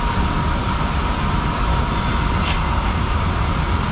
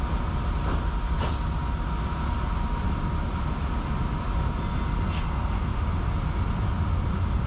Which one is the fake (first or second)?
first